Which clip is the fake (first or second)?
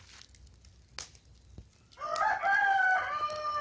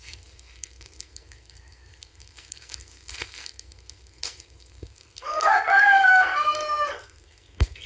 second